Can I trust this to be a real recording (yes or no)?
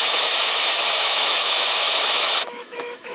no